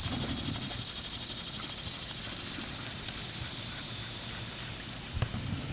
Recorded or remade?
recorded